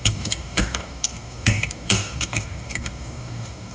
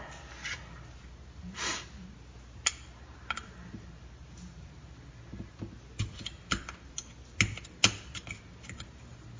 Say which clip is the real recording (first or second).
second